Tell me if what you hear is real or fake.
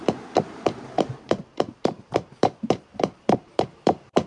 fake